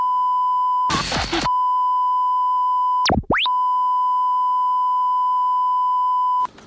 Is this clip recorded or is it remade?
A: recorded